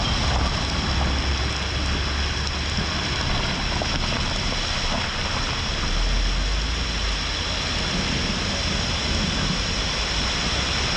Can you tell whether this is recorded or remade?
recorded